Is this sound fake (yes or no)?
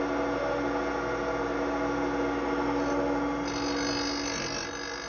no